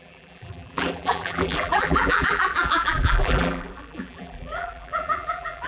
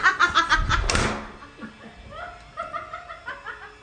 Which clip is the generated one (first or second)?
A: first